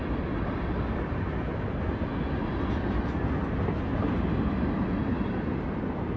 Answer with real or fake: real